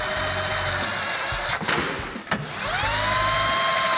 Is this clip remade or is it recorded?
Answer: recorded